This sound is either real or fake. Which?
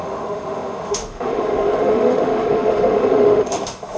fake